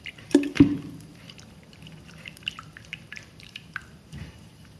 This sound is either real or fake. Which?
fake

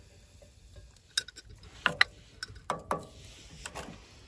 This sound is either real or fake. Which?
real